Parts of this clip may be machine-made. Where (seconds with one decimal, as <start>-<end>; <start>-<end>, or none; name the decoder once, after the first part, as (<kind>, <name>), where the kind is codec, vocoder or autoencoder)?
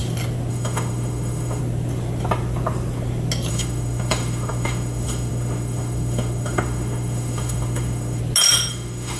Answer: 0.5-1.6 (autoencoder, DAC-VAE); 3.5-8.2; 8.7-9.2